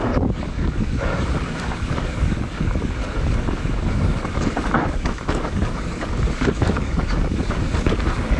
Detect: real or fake fake